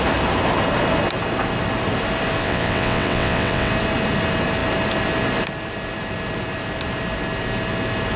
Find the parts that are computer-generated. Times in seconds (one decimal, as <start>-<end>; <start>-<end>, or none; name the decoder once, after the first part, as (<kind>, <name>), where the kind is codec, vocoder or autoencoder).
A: 2.4-3.7 (vocoder, WaveNeXt)